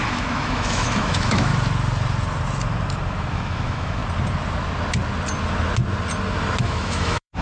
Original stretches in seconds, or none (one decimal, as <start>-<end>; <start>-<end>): 1.5-3.3; 4.0-6.6